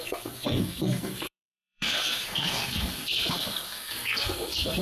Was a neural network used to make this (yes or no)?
yes